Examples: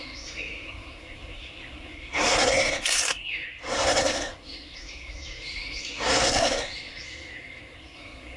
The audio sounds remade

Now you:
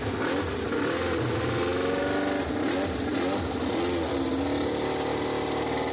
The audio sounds recorded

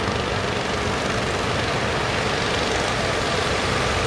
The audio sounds recorded